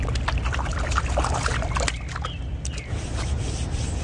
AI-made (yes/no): no